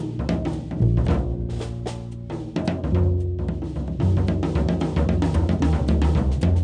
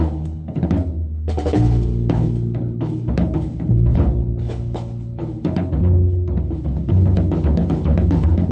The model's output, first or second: second